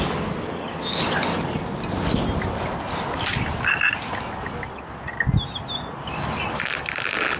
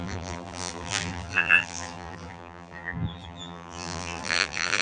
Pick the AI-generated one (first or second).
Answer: second